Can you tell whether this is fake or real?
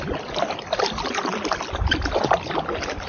real